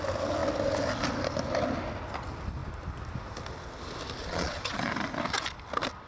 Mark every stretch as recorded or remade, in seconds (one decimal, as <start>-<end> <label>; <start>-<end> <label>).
0.0-4.2 recorded; 4.2-4.9 remade; 4.9-6.1 recorded